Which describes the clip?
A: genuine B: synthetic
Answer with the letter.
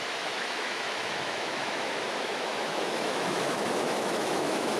B